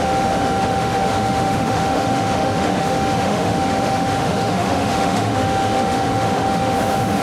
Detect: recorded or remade remade